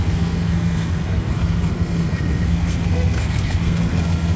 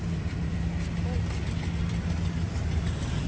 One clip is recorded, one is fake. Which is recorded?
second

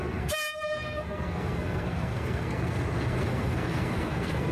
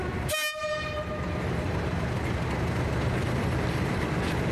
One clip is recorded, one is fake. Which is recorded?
second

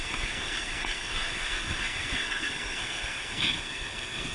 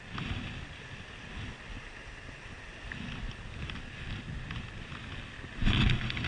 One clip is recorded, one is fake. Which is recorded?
second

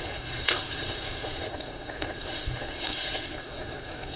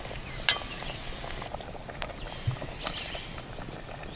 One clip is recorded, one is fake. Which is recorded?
second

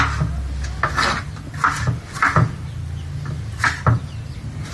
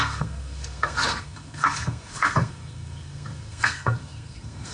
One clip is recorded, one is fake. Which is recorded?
first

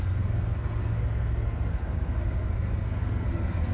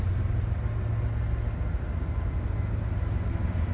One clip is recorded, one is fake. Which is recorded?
second